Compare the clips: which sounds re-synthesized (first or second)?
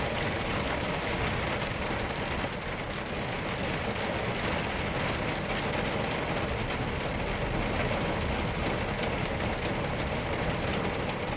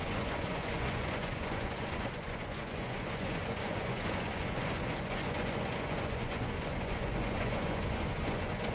second